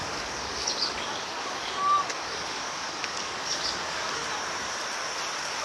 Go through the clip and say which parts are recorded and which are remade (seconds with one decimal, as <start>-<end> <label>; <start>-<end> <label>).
0.0-4.2 remade; 4.2-5.6 recorded

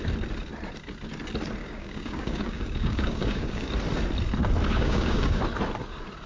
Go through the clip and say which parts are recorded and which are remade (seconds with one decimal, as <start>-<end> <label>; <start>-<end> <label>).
0.0-1.6 recorded; 1.6-3.7 remade; 3.7-4.7 recorded; 4.7-5.4 remade; 5.4-6.3 recorded

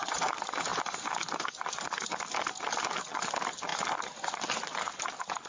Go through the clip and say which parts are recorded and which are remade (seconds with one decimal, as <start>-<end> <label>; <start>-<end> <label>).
0.0-5.5 recorded

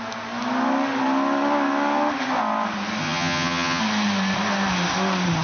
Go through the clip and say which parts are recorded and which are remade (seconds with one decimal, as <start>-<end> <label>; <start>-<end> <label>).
0.0-3.0 recorded; 3.0-3.8 remade; 3.8-5.4 recorded

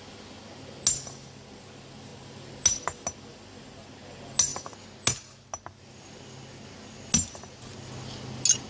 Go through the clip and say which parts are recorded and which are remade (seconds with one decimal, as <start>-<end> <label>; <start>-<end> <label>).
0.0-8.7 recorded

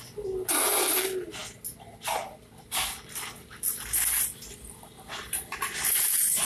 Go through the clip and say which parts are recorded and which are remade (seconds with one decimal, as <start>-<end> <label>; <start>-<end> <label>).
0.0-6.4 recorded

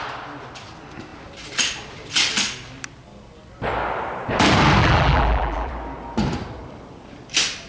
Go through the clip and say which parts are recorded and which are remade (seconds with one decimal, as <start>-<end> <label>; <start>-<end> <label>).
0.0-4.8 recorded; 4.8-5.7 remade; 5.7-7.7 recorded